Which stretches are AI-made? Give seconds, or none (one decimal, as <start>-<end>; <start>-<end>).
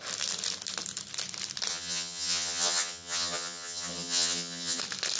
1.7-4.8